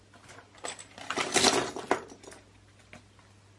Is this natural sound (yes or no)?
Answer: yes